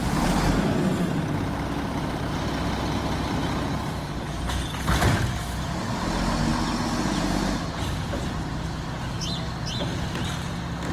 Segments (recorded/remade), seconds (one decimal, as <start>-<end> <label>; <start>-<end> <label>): 0.0-3.0 recorded; 3.0-4.6 remade; 4.6-6.5 recorded; 6.5-8.8 remade; 8.8-10.9 recorded

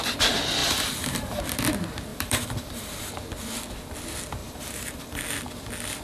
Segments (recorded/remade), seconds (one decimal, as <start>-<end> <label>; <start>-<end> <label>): 0.0-0.6 recorded; 0.6-1.4 remade; 1.4-2.1 recorded; 2.1-3.1 remade; 3.1-4.4 recorded; 4.4-5.2 remade; 5.2-6.0 recorded

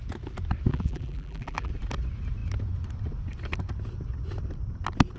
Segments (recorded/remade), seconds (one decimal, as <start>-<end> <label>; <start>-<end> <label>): 0.0-0.7 recorded; 0.7-1.7 remade; 1.7-5.2 recorded

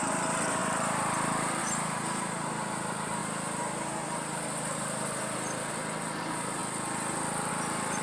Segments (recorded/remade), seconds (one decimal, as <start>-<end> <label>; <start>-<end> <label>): 0.0-6.6 remade; 6.6-7.5 recorded; 7.5-8.0 remade

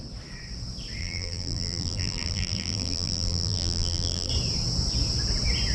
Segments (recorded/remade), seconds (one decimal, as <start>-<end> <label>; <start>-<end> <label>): 0.0-1.0 recorded; 1.0-4.3 remade; 4.3-5.7 recorded

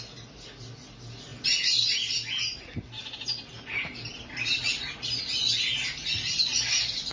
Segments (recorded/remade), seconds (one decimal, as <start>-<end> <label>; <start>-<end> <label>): 0.0-7.1 recorded

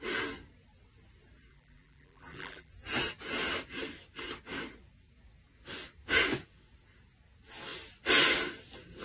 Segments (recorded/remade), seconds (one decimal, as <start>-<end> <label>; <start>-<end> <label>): 0.0-1.5 recorded; 1.5-2.7 remade; 2.7-9.0 recorded